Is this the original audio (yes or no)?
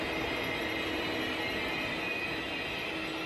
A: yes